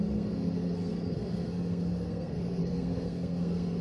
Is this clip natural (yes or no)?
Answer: no